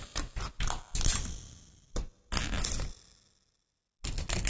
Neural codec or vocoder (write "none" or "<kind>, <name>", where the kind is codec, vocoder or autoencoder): none